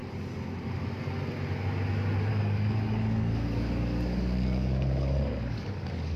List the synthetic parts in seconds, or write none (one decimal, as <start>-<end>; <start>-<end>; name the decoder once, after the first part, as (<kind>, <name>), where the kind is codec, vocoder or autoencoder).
2.3-6.2 (codec, DAC)